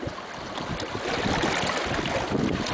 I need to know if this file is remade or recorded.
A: recorded